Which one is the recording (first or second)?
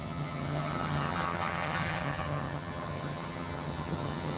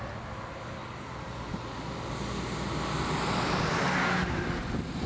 second